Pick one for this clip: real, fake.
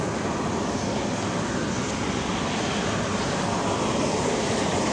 real